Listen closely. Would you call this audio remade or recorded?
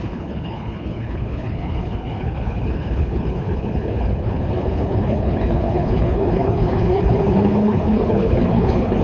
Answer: remade